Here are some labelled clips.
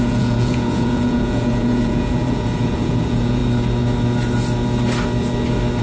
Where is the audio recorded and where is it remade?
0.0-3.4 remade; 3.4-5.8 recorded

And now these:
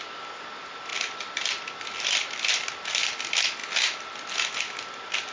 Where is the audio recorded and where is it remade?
0.0-5.3 recorded

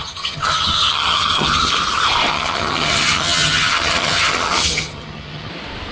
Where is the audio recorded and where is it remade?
0.0-1.7 remade; 1.7-2.3 recorded; 2.3-5.5 remade; 5.5-5.9 recorded

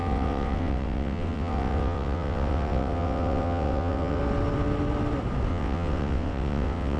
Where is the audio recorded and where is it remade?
0.0-4.2 remade; 4.2-5.5 recorded; 5.5-7.0 remade

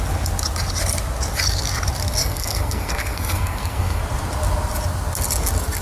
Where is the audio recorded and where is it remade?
0.0-2.2 recorded; 2.2-4.0 remade; 4.0-5.8 recorded